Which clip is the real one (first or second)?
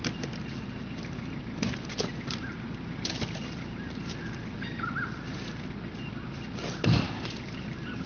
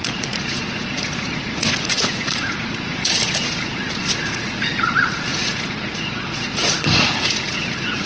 first